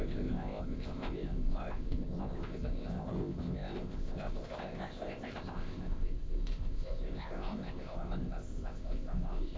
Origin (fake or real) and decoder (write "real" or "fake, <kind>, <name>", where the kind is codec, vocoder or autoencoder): fake, codec, ZipCodec